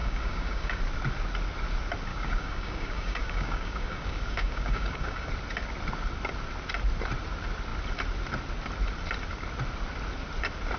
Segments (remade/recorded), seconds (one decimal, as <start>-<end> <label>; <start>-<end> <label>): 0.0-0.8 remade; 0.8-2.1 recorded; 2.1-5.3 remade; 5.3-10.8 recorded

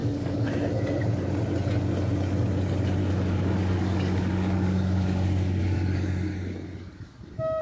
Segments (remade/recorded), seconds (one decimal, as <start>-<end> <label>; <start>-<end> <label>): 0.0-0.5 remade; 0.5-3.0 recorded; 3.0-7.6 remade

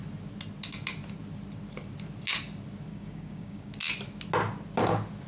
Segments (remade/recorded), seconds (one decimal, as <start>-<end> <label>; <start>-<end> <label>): 0.0-2.9 recorded; 2.9-3.7 remade; 3.7-5.3 recorded

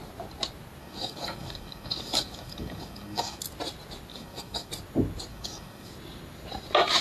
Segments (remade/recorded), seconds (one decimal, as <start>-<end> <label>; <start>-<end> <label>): 0.0-0.8 recorded; 0.8-3.4 remade; 3.4-4.1 recorded; 4.1-4.7 remade; 4.7-5.3 recorded; 5.3-5.9 remade; 5.9-7.0 recorded

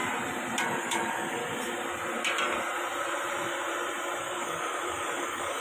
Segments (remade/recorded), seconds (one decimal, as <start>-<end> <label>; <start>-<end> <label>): 0.0-0.7 recorded; 0.7-1.4 remade; 1.4-4.2 recorded; 4.2-5.6 remade

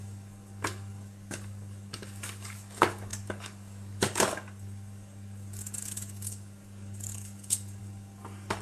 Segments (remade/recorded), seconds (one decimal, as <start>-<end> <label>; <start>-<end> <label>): 0.0-8.6 remade

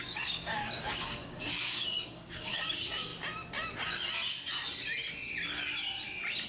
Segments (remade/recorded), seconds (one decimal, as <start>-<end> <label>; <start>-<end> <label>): 0.0-3.1 remade; 3.1-6.5 recorded